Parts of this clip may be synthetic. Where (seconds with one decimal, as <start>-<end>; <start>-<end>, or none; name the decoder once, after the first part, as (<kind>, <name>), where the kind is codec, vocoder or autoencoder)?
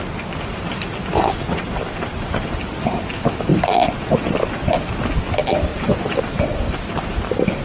0.7-2.7 (vocoder, BigVGAN v2); 3.5-5.2; 5.7-6.2